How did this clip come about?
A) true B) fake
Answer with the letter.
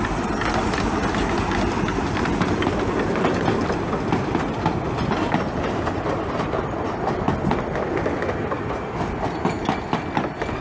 A